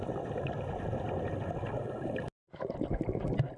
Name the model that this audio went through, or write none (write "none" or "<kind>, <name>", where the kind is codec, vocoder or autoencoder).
none